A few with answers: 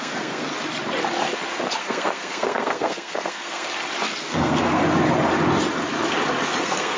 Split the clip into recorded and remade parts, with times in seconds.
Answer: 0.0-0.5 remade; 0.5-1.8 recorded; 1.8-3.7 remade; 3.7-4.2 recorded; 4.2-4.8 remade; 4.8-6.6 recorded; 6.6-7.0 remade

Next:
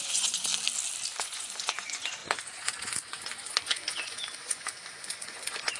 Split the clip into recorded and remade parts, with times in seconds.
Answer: 0.0-0.5 remade; 0.5-1.2 recorded; 1.2-5.8 remade

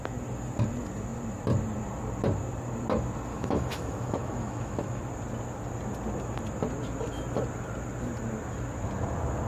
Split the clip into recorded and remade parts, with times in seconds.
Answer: 0.0-3.3 recorded; 3.3-5.0 remade; 5.0-9.5 recorded

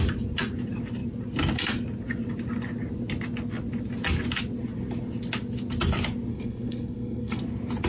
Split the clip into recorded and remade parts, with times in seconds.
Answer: 0.0-6.3 recorded; 6.3-7.4 remade; 7.4-7.9 recorded

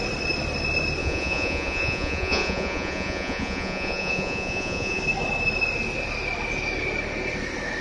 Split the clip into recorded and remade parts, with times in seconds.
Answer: 0.0-1.0 recorded; 1.0-5.0 remade; 5.0-7.8 recorded

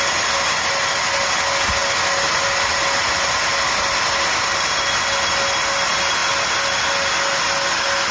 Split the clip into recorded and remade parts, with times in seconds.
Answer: 0.0-8.1 recorded

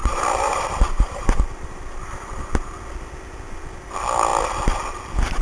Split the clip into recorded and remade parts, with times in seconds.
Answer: 0.0-2.7 remade; 2.7-5.4 recorded